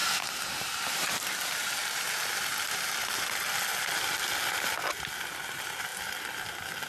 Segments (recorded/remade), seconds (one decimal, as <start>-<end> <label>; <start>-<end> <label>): 0.0-1.7 remade; 1.7-6.9 recorded